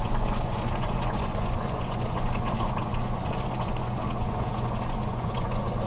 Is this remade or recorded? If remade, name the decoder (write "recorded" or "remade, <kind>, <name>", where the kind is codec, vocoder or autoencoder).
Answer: remade, vocoder, Vocos